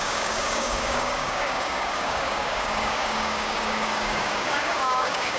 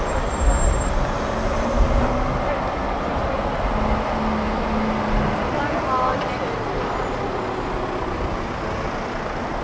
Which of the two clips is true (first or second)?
second